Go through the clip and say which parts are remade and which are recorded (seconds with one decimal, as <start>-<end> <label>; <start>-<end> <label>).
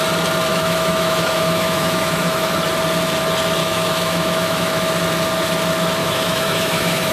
0.0-0.5 recorded; 0.5-2.5 remade; 2.5-3.6 recorded; 3.6-4.9 remade; 4.9-6.0 recorded; 6.0-7.1 remade